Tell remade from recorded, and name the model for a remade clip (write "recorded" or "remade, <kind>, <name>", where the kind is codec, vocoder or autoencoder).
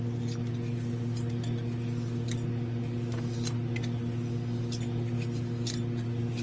recorded